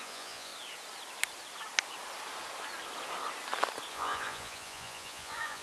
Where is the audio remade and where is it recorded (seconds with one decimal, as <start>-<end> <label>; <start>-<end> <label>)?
0.0-0.5 remade; 0.5-3.9 recorded; 3.9-5.6 remade